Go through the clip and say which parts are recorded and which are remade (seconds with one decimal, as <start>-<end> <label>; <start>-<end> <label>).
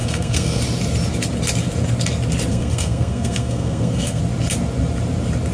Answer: 0.0-0.6 remade; 0.6-2.5 recorded; 2.5-4.2 remade; 4.2-5.5 recorded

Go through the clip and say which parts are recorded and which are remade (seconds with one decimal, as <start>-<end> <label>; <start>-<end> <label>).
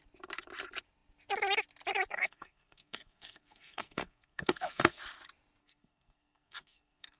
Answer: 0.0-2.1 recorded; 2.1-5.0 remade; 5.0-5.6 recorded; 5.6-7.2 remade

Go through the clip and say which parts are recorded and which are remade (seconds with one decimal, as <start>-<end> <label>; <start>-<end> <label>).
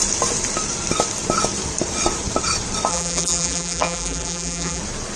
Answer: 0.0-2.9 recorded; 2.9-4.8 remade; 4.8-5.2 recorded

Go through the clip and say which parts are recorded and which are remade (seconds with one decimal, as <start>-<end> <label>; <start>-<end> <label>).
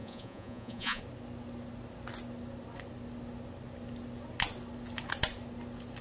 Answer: 0.0-1.0 remade; 1.0-6.0 recorded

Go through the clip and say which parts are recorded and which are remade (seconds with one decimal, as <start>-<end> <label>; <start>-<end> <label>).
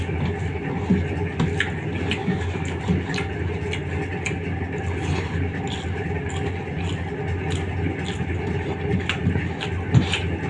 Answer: 0.0-2.2 recorded; 2.2-2.8 remade; 2.8-10.5 recorded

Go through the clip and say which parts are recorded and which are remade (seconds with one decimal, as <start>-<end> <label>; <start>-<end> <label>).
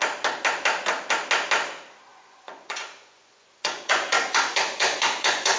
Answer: 0.0-2.1 recorded; 2.1-5.6 remade